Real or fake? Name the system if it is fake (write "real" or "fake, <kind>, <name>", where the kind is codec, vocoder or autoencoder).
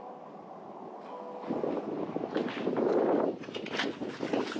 real